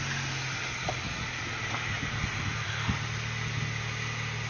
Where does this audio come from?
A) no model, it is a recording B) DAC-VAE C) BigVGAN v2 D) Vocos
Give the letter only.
A